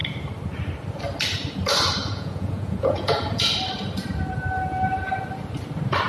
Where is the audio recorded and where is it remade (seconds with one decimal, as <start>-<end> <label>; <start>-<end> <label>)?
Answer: 0.0-2.0 recorded; 2.0-3.5 remade; 3.5-6.1 recorded